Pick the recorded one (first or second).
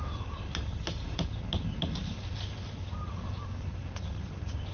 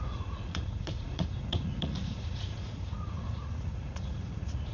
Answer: first